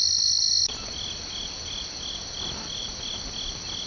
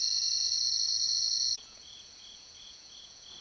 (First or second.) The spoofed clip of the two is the second